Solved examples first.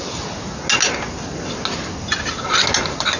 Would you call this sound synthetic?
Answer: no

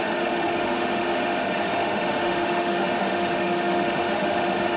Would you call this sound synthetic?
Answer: yes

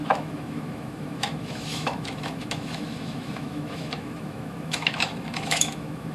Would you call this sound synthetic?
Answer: yes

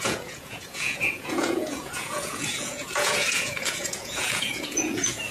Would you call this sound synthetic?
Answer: yes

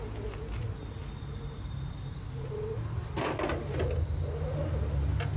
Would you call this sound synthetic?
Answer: no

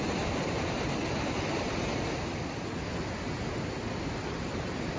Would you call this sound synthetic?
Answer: no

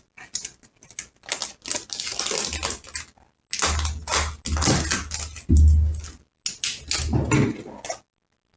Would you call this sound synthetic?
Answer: no